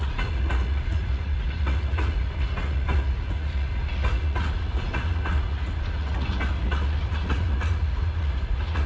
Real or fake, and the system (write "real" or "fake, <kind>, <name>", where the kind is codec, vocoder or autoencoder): fake, vocoder, Vocos